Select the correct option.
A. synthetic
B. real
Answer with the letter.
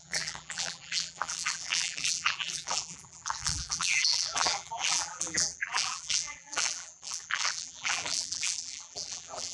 A